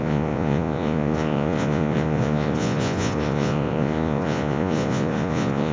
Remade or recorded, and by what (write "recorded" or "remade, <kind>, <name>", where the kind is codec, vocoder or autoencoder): remade, vocoder, Vocos